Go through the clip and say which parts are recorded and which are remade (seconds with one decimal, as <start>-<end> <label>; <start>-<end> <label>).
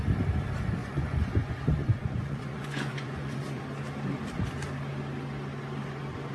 0.0-0.8 recorded; 0.8-3.6 remade; 3.6-6.3 recorded